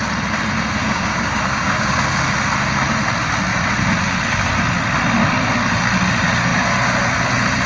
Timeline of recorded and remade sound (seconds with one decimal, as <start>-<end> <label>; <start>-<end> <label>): 0.0-0.8 recorded; 0.8-2.0 remade; 2.0-7.7 recorded